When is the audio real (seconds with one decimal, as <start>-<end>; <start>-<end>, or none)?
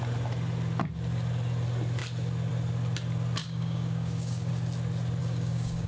0.0-3.4; 4.5-5.2